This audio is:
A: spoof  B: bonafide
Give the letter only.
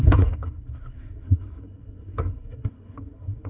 A